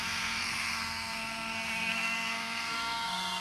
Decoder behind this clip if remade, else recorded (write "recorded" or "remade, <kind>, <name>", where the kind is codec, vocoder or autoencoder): remade, codec, SNAC